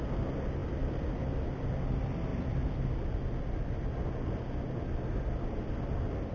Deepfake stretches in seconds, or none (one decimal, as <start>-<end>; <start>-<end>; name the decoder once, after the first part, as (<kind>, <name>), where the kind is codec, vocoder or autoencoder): none